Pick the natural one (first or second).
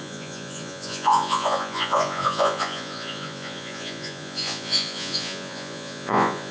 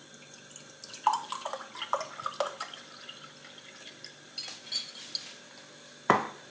second